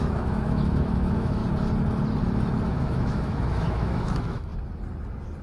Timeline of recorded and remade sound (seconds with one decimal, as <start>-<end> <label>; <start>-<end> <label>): 0.0-1.4 remade; 1.4-2.7 recorded; 2.7-4.5 remade; 4.5-5.4 recorded

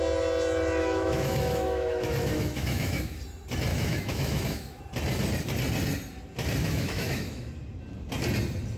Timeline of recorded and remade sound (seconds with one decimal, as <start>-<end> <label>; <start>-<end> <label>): 0.0-0.8 recorded; 0.8-3.2 remade; 3.2-3.7 recorded; 3.7-4.8 remade; 4.8-6.6 recorded; 6.6-7.5 remade; 7.5-8.8 recorded

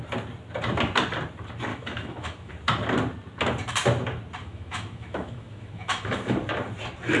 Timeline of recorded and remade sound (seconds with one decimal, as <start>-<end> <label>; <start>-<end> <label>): 0.0-1.7 recorded; 1.7-2.5 remade; 2.5-4.4 recorded; 4.4-6.4 remade; 6.4-7.2 recorded